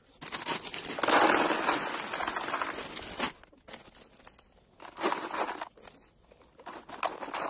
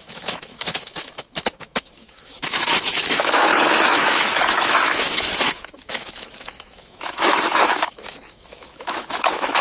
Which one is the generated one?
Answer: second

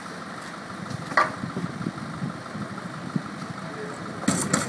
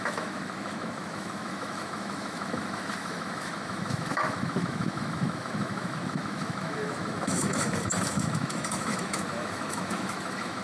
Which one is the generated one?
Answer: second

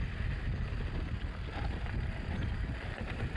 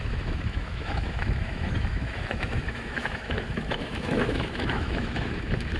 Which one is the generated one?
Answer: second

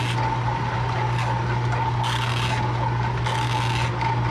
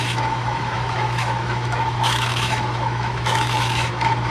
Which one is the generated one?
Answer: second